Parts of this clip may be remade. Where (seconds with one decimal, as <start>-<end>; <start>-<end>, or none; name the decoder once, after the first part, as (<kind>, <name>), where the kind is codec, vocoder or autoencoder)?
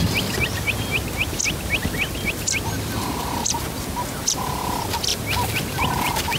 none